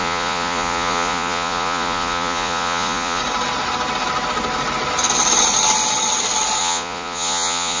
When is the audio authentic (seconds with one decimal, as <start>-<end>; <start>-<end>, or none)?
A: 3.2-6.6